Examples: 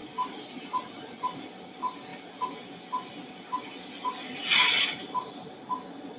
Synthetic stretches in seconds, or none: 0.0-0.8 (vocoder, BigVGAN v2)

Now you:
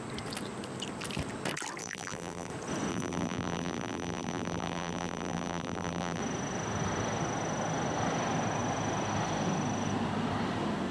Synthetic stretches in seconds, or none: 1.8-2.5 (vocoder, BigVGAN v2); 2.9-6.2

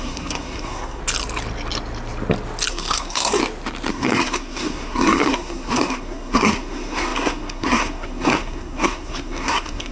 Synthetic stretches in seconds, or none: 0.0-1.0 (codec, SNAC); 2.7-3.4; 3.9-9.9